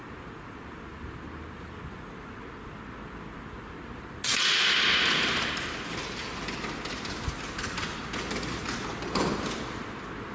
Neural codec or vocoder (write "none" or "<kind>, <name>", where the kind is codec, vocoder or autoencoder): none